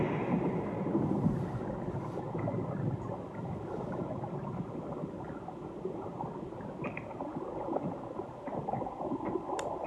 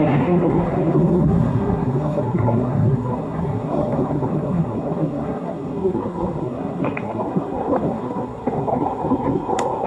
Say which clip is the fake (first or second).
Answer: second